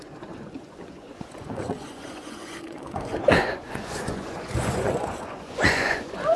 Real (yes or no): no